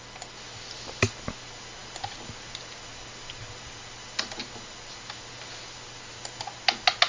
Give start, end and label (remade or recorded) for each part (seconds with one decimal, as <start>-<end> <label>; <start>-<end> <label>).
0.0-7.1 recorded